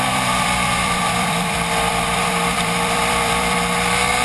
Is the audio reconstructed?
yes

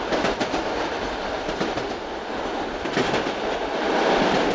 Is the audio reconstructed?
no